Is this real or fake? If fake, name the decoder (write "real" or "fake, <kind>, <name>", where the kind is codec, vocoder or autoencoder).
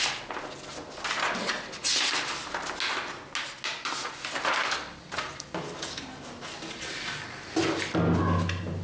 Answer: real